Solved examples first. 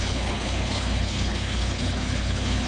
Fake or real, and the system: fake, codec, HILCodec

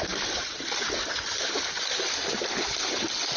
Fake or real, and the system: real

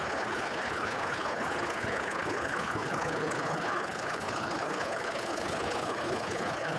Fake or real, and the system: fake, codec, HILCodec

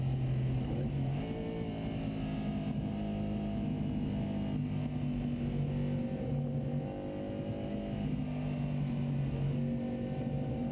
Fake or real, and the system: real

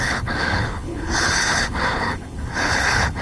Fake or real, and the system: fake, codec, HILCodec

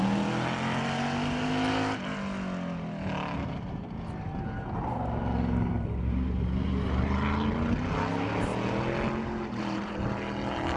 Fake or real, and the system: real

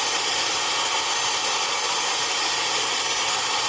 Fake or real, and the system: real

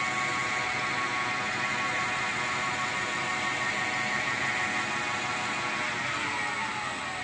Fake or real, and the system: real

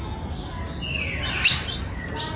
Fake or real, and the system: real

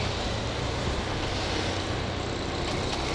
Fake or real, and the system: real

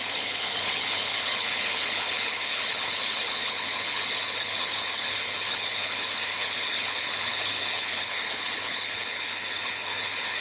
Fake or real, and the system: fake, codec, HILCodec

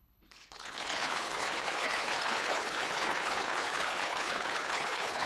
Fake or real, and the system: fake, codec, HILCodec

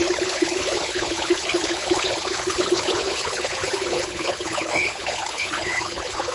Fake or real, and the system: fake, codec, HILCodec